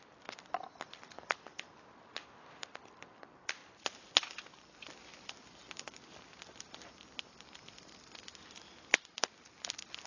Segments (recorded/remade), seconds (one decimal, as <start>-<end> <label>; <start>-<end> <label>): 0.0-10.1 recorded